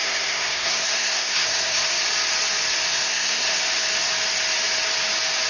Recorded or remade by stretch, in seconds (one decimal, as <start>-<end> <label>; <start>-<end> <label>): 0.0-1.9 remade; 1.9-2.9 recorded; 2.9-3.6 remade; 3.6-5.5 recorded

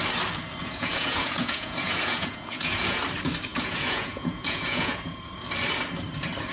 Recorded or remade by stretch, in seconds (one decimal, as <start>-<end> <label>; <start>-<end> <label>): 0.0-0.6 recorded; 0.6-3.0 remade; 3.0-3.5 recorded; 3.5-5.3 remade; 5.3-6.5 recorded

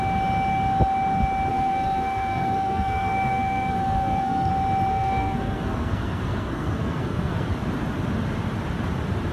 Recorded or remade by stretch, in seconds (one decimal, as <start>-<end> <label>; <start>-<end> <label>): 0.0-1.5 recorded; 1.5-4.5 remade; 4.5-4.9 recorded; 4.9-7.5 remade; 7.5-9.3 recorded

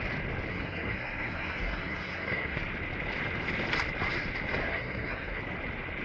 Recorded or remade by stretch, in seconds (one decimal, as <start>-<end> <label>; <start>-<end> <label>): 0.0-0.5 recorded; 0.5-2.6 remade; 2.6-4.7 recorded; 4.7-5.4 remade; 5.4-6.0 recorded

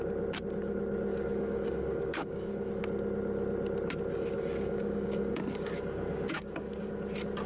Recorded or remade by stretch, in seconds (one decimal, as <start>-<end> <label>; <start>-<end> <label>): 0.0-1.1 recorded; 1.1-2.7 remade; 2.7-4.1 recorded; 4.1-6.9 remade; 6.9-7.5 recorded